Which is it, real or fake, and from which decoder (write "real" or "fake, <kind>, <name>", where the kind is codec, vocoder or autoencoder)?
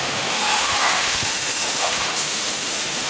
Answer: fake, autoencoder, DAC-VAE